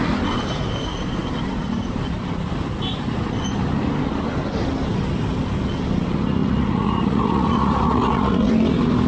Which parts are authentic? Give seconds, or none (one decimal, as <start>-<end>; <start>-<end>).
0.0-6.4; 8.5-9.1